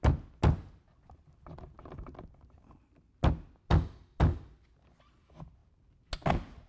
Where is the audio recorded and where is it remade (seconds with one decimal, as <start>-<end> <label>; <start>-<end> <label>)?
0.0-6.7 recorded